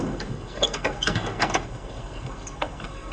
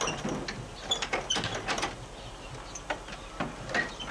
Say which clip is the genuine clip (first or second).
second